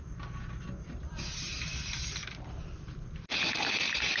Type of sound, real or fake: real